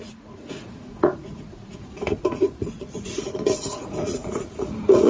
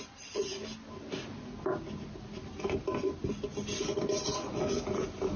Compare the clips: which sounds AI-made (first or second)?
first